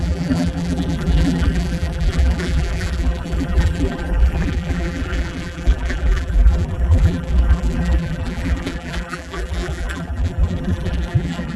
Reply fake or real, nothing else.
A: fake